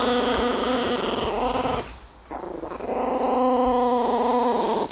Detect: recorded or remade recorded